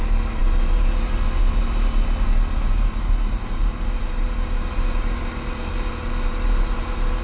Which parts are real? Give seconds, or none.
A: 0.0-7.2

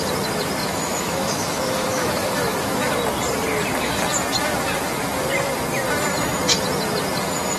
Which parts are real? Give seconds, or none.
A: 0.0-0.6; 2.9-7.6

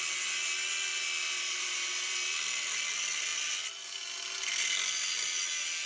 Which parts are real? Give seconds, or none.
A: 0.0-5.9

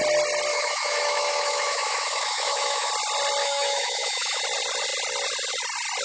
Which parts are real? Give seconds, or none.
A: 0.0-0.5; 2.9-3.4; 4.4-6.0

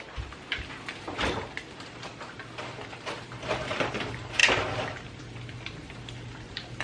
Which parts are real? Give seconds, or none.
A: 2.1-2.8; 4.4-5.2